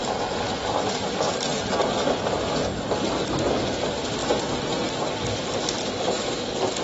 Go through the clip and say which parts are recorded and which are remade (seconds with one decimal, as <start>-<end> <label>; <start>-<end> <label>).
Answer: 0.0-1.3 remade; 1.3-6.8 recorded